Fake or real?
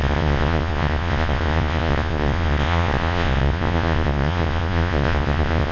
fake